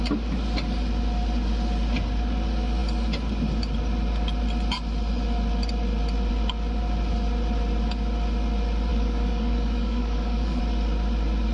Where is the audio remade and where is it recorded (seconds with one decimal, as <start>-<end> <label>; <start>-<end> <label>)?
0.0-8.9 recorded; 8.9-10.6 remade; 10.6-11.5 recorded